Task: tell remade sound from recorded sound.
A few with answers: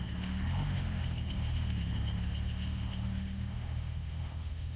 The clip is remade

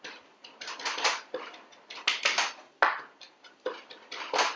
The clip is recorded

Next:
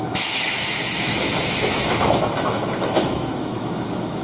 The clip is remade